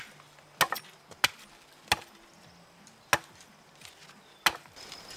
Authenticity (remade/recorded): recorded